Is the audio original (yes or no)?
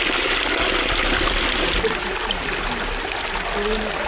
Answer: yes